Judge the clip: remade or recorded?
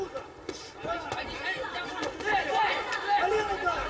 recorded